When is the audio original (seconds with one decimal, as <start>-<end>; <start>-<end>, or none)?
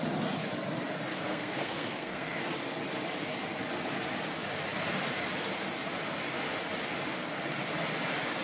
0.0-1.3; 2.4-8.4